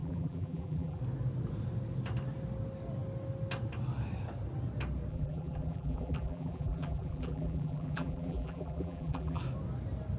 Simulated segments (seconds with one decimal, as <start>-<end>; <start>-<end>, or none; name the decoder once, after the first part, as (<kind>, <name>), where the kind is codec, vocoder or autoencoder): 0.0-1.0 (vocoder, BigVGAN v2); 5.1-9.4